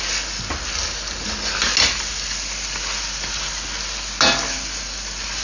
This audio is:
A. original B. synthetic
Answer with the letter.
A